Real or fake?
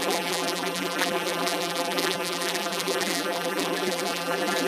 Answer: fake